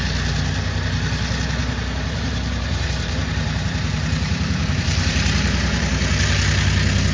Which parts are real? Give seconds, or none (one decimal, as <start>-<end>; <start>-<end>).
0.0-1.6; 5.9-7.1